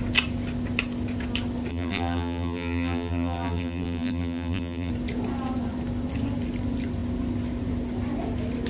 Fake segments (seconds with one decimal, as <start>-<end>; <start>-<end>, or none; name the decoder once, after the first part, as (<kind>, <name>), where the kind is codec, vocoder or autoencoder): 1.7-4.9 (vocoder, BigVGAN v2)